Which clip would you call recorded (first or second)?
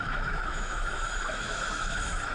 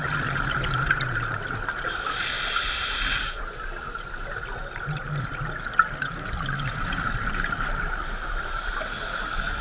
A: second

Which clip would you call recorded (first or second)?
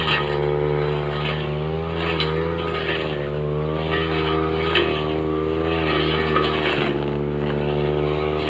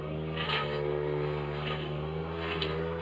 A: first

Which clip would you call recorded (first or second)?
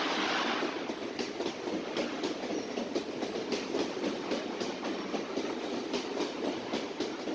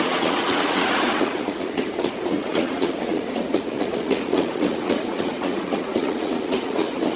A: first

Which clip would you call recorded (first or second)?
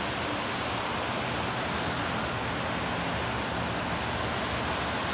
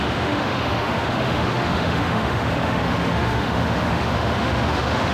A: first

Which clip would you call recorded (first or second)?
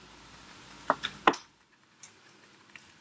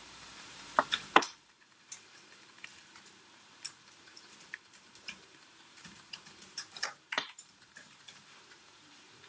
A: first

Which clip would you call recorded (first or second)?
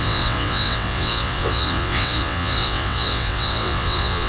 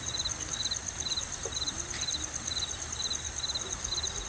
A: second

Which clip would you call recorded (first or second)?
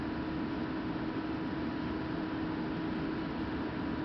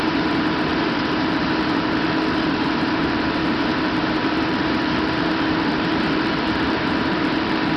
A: first